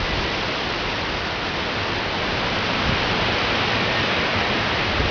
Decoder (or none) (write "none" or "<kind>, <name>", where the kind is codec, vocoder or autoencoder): none